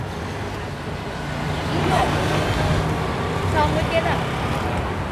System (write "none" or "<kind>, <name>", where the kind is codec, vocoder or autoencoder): none